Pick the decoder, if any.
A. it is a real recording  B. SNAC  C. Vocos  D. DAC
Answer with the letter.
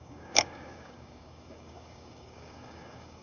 D